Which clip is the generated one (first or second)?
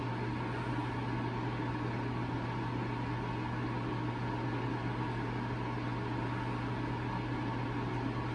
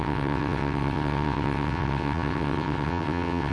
second